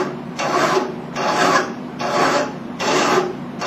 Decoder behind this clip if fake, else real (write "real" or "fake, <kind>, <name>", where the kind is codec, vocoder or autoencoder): fake, vocoder, BigVGAN v2